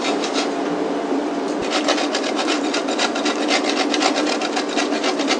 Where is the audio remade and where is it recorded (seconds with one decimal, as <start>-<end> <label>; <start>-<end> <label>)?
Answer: 0.0-5.4 recorded

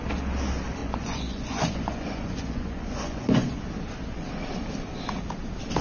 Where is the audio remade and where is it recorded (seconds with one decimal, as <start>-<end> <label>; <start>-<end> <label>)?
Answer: 0.0-0.8 recorded; 0.8-3.6 remade; 3.6-5.8 recorded

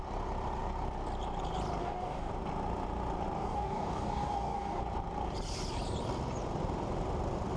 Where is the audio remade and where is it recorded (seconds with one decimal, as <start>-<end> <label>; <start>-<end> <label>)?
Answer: 0.0-1.8 recorded; 1.8-2.3 remade; 2.3-3.4 recorded; 3.4-4.8 remade; 4.8-7.6 recorded

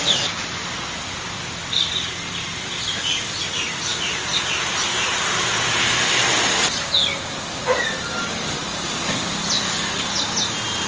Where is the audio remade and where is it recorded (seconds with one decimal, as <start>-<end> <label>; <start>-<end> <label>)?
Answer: 0.0-10.9 recorded